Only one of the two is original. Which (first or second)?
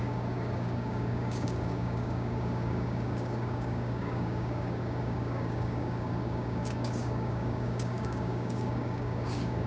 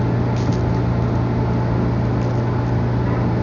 second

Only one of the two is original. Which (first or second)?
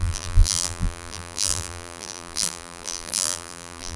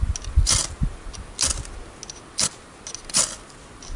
second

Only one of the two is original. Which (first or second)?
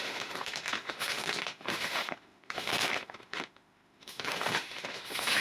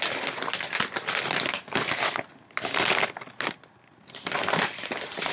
second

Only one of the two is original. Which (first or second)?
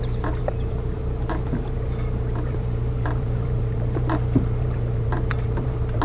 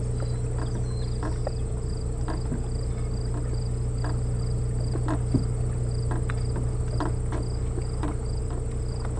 second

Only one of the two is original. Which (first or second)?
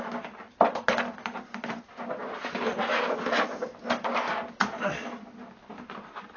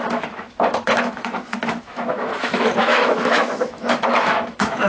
first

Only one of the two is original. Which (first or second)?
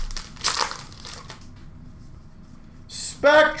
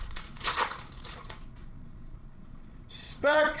first